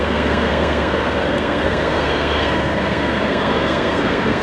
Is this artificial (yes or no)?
yes